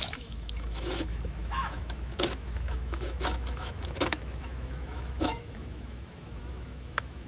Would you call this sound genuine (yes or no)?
no